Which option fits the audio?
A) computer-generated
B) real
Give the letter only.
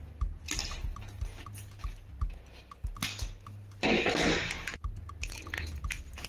B